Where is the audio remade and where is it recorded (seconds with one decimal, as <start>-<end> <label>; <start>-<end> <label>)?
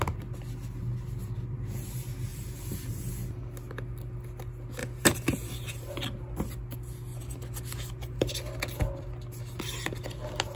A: 0.0-2.3 recorded; 2.3-3.1 remade; 3.1-4.8 recorded; 4.8-5.9 remade; 5.9-7.1 recorded; 7.1-8.3 remade; 8.3-10.6 recorded